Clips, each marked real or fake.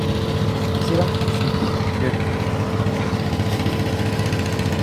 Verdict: real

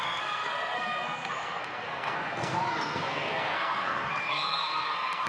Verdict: fake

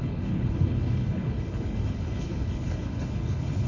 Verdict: fake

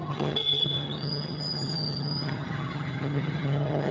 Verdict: fake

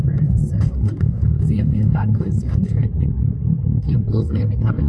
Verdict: fake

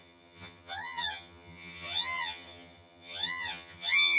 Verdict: fake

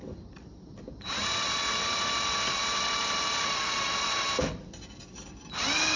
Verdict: fake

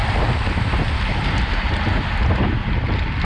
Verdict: fake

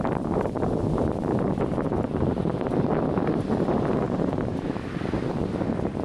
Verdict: fake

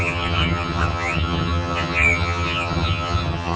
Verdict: fake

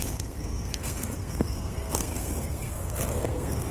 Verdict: fake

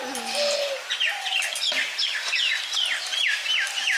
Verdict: real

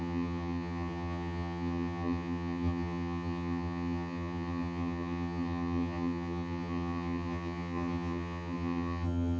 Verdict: fake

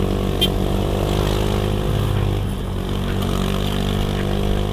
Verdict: real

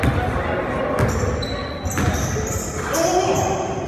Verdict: real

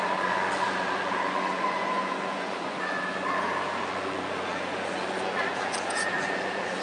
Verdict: fake